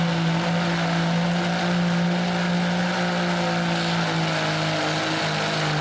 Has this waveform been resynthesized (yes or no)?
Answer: no